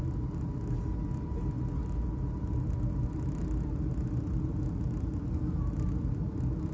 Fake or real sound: real